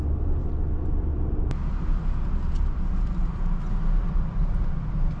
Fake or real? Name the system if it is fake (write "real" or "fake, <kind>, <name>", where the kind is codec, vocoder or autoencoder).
real